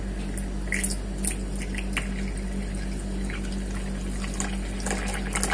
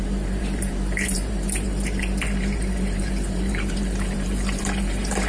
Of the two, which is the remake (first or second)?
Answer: second